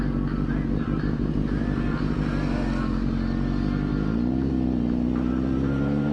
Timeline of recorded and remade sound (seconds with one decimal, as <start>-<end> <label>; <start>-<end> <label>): 0.0-6.1 recorded